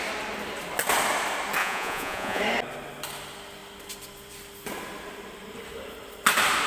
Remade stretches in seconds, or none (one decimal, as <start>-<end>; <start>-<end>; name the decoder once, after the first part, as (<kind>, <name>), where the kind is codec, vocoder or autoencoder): 1.6-2.4 (vocoder, Vocos)